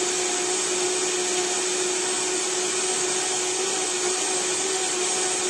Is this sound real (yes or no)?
yes